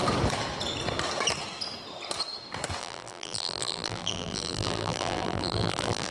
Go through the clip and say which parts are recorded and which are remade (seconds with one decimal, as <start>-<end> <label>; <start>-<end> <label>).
0.0-2.8 recorded; 2.8-6.1 remade